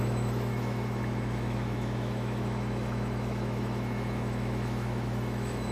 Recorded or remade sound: remade